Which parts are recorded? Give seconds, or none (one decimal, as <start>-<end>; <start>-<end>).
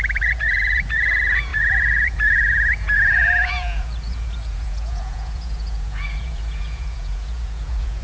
none